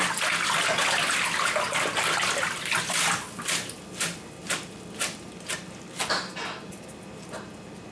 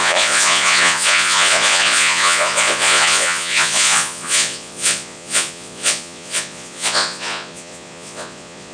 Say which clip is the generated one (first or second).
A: second